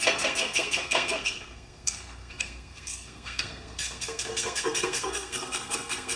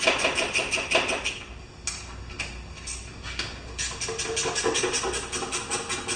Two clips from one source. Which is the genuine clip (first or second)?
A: second